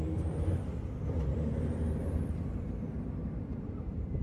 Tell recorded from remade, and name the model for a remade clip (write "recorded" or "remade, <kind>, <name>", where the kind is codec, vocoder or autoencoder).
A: remade, vocoder, BigVGAN v2